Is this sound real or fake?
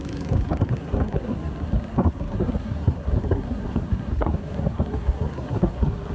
fake